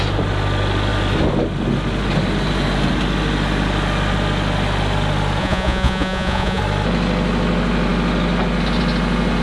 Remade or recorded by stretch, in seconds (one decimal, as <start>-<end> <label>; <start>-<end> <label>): 0.0-5.4 recorded; 5.4-6.6 remade; 6.6-9.4 recorded